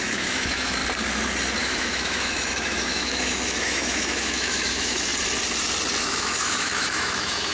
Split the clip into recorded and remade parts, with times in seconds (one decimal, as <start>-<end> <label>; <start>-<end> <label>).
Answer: 0.0-0.8 remade; 0.8-1.6 recorded; 1.6-5.1 remade; 5.1-6.0 recorded; 6.0-7.5 remade